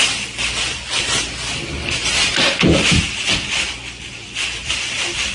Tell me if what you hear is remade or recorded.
remade